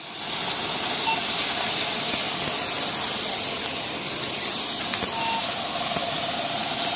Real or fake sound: real